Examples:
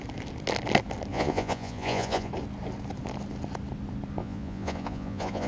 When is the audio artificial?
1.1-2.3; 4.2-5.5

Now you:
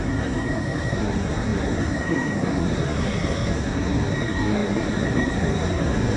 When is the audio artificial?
0.0-6.2

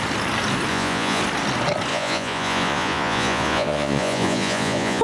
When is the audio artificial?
0.7-1.2; 1.9-5.0

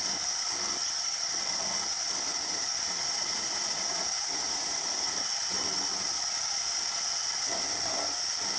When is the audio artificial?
2.3-5.1

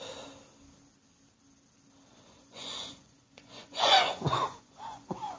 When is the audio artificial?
2.1-5.4

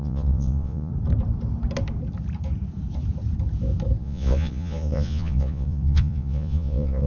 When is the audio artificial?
0.0-0.9; 4.0-7.1

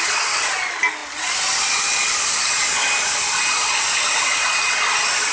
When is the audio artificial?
none